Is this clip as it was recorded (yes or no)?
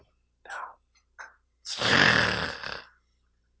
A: no